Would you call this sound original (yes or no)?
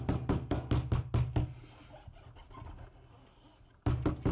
yes